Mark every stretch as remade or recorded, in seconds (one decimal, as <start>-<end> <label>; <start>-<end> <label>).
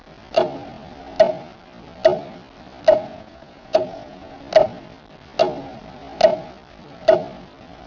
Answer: 0.0-3.1 recorded; 3.1-4.4 remade; 4.4-7.9 recorded